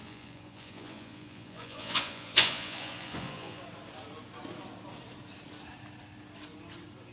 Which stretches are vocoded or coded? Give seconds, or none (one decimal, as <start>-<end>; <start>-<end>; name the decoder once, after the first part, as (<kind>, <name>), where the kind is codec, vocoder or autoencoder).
0.0-3.6 (vocoder, Vocos)